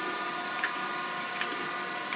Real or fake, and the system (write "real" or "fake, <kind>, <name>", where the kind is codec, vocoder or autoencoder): real